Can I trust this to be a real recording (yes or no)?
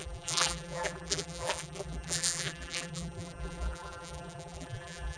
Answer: no